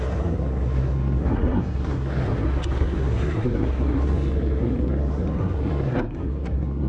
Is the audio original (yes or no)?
no